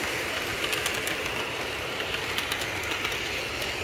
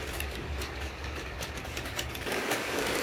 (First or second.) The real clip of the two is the first